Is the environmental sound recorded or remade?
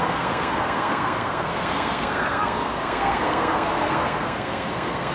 remade